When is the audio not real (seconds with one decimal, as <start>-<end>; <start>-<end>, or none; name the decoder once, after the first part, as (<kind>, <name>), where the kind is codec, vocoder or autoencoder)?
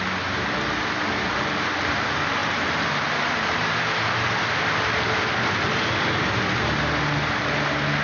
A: none